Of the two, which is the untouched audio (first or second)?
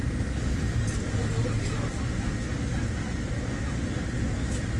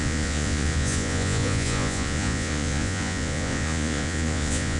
first